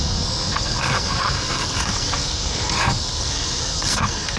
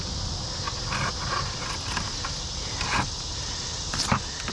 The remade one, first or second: first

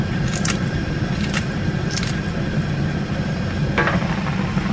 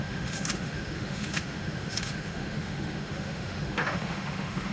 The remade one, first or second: second